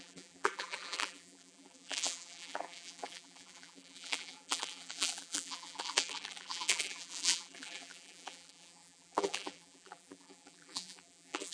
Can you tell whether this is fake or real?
fake